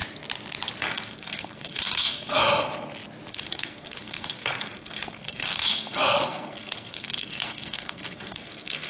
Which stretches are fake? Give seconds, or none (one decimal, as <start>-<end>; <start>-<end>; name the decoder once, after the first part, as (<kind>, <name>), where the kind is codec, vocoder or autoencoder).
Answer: 0.8-2.4 (codec, SNAC); 3.3-8.9